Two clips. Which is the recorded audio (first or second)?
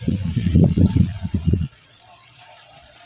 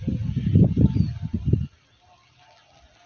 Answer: second